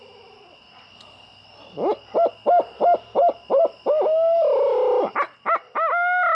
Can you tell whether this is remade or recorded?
recorded